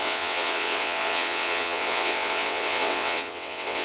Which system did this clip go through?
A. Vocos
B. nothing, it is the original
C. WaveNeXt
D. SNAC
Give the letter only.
C